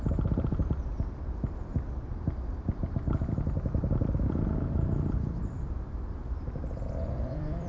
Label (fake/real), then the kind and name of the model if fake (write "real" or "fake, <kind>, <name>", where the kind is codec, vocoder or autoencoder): fake, vocoder, BigVGAN v2